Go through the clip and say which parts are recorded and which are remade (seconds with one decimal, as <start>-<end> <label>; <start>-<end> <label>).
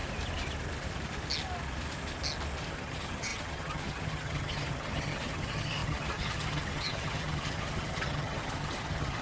0.0-2.7 recorded; 2.7-9.2 remade